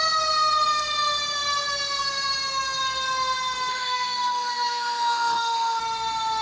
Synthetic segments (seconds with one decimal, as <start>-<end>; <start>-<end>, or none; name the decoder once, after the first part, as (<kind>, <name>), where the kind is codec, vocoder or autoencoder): 3.7-5.8 (autoencoder, DAC-VAE)